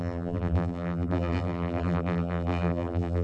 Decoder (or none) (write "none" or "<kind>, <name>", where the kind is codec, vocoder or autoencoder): vocoder, BigVGAN v2